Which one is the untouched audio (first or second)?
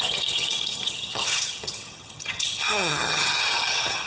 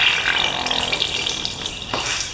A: second